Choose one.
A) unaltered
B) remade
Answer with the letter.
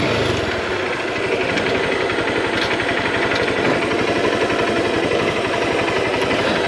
A